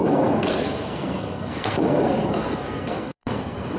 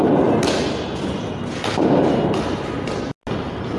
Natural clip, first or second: second